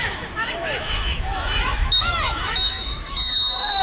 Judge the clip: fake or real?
fake